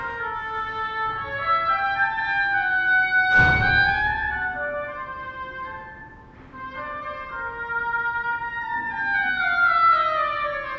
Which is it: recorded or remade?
recorded